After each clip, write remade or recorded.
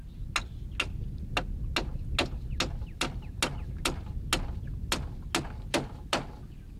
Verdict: recorded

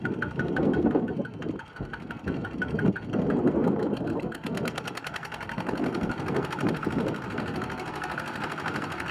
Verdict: remade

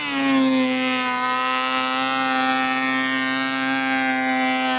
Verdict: recorded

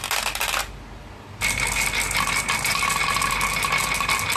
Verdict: recorded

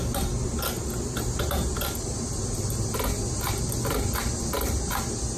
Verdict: recorded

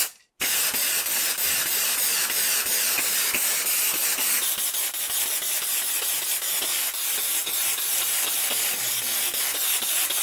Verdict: recorded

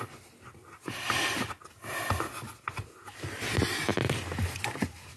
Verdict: recorded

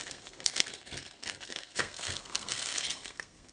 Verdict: remade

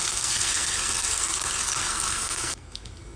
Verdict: remade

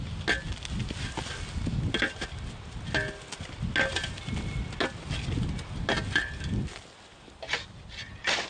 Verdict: recorded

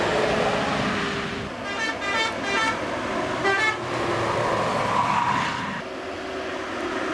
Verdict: recorded